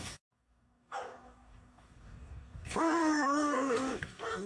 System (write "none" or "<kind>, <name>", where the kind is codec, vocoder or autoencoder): codec, DAC